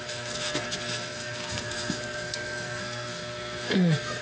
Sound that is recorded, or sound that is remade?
remade